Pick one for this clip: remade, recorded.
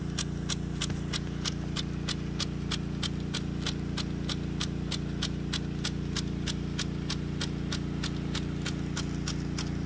recorded